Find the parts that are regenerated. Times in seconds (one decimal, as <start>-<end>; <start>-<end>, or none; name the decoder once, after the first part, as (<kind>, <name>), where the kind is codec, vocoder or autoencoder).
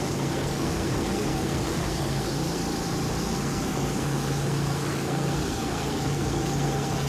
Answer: 0.0-2.6 (codec, SNAC); 3.2-7.1